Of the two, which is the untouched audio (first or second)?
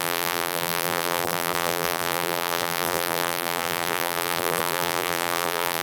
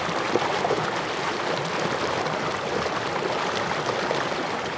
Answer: second